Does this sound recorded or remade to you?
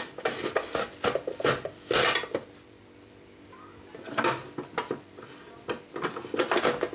recorded